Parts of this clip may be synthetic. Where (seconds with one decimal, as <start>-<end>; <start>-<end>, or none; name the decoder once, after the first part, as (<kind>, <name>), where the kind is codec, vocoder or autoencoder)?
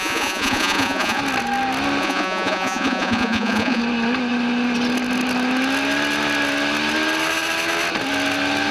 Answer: 0.0-1.2 (vocoder, Vocos); 2.0-3.8